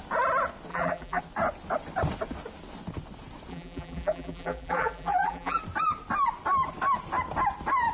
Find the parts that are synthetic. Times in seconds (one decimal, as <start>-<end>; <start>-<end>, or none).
0.7-1.2; 3.5-5.6